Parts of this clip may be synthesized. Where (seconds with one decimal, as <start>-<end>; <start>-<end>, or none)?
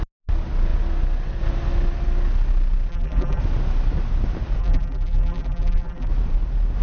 2.9-3.4; 4.6-6.1